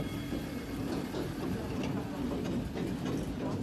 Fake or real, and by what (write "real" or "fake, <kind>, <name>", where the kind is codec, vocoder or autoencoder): real